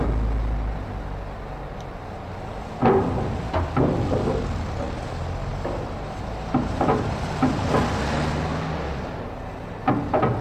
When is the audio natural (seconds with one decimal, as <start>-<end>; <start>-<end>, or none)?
0.0-5.5; 7.1-10.4